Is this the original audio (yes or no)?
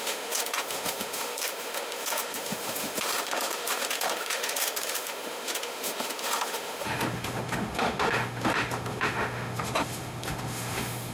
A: no